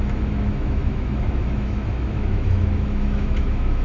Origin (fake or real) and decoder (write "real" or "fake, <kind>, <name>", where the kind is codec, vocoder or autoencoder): fake, autoencoder, DAC-VAE